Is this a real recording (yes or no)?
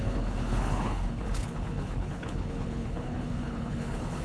no